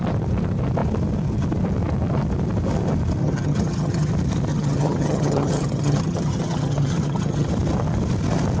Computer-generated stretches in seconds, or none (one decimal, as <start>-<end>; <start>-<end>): 3.2-4.1; 4.5-7.5